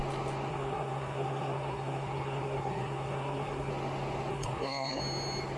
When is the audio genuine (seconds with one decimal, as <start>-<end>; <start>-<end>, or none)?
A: 0.0-0.5; 3.7-4.3; 5.0-5.6